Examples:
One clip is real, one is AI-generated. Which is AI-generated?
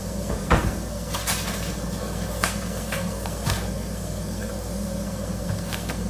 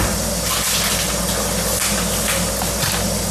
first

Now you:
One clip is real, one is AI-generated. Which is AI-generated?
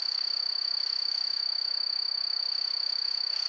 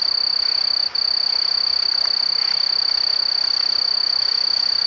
first